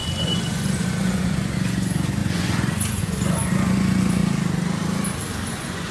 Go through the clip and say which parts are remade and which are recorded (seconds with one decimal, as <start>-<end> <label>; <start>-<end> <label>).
0.0-4.2 remade; 4.2-5.5 recorded; 5.5-5.9 remade